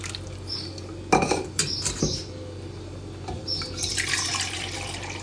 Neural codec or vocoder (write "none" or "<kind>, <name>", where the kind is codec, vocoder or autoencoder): none